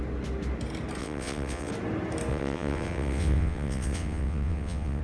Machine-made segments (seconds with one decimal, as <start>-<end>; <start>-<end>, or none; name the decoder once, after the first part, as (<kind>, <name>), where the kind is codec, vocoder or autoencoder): 1.0-1.7 (vocoder, WaveNeXt); 2.3-5.0